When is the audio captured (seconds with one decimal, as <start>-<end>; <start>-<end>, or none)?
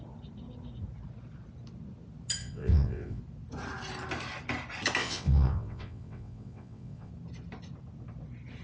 0.0-2.4; 3.2-5.0; 7.1-8.6